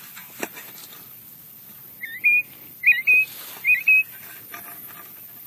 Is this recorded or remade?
recorded